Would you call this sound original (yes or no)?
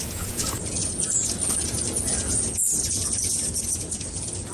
no